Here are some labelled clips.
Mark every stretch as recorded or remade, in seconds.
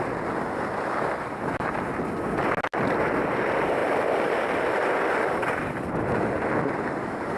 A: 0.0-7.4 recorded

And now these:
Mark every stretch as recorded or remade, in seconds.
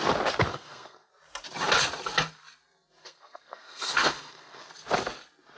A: 0.0-0.5 recorded; 0.5-1.1 remade; 1.1-3.0 recorded; 3.0-4.7 remade; 4.7-5.6 recorded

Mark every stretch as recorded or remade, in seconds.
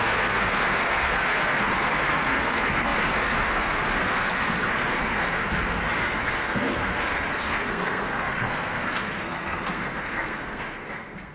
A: 0.0-11.3 remade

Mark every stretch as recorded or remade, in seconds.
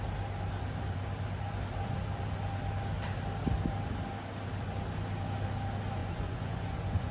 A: 0.0-6.0 recorded; 6.0-7.1 remade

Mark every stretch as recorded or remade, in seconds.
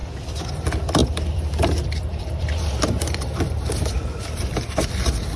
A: 0.0-0.5 recorded; 0.5-5.4 remade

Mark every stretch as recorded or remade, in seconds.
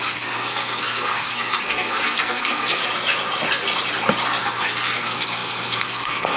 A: 0.0-2.8 remade; 2.8-4.4 recorded; 4.4-6.4 remade